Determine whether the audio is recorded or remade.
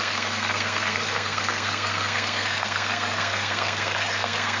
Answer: remade